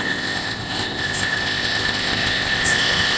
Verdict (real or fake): fake